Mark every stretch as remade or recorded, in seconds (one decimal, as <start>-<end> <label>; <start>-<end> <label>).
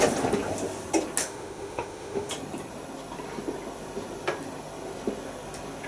0.0-1.2 recorded; 1.2-2.3 remade; 2.3-5.9 recorded